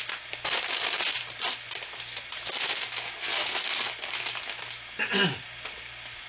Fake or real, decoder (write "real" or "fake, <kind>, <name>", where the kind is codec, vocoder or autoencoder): real